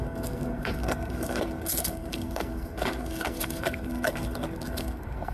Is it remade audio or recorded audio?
remade